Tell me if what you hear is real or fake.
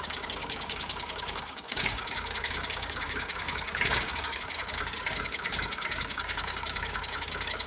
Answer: fake